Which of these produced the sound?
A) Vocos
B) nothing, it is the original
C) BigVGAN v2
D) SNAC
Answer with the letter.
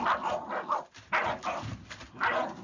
B